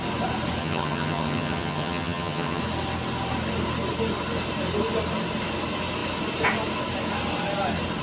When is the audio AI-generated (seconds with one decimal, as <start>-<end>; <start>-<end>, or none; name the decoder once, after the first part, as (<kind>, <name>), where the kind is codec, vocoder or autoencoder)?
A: 0.6-2.6 (vocoder, HiFi-GAN)